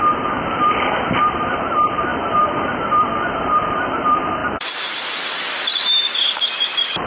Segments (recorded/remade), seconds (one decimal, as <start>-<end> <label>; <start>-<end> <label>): 0.0-6.0 remade; 6.0-6.6 recorded; 6.6-7.1 remade